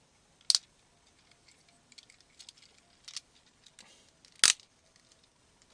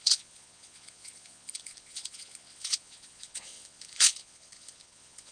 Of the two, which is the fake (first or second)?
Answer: second